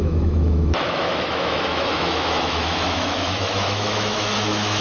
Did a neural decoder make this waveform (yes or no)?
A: yes